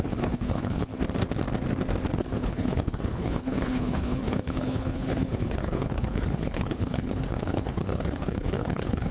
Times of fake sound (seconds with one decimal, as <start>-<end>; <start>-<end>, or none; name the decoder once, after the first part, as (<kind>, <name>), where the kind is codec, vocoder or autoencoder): 0.0-0.9 (codec, HILCodec); 2.2-9.1